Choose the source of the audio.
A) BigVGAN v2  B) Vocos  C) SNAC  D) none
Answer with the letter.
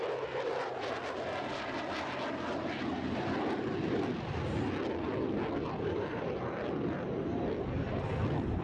D